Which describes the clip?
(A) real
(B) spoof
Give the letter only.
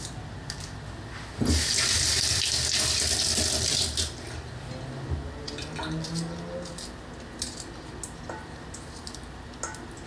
A